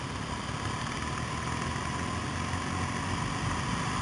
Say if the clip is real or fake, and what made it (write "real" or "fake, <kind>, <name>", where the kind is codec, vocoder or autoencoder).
real